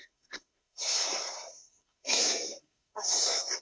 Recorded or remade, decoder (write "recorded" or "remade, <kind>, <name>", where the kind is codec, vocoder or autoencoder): remade, codec, SNAC